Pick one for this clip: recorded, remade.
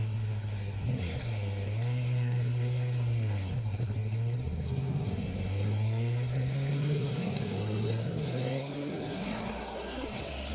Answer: remade